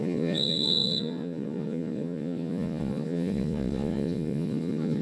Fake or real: fake